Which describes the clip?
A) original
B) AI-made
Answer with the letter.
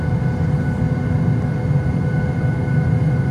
A